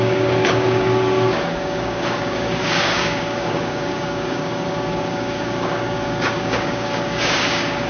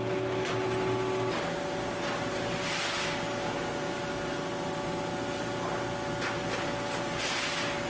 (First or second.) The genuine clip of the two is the second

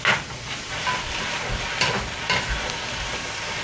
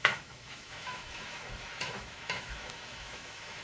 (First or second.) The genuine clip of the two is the first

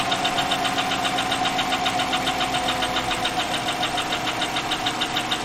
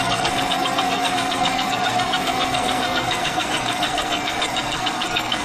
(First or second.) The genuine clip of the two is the first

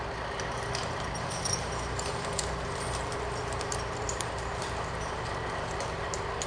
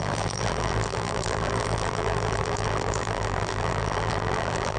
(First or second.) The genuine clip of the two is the first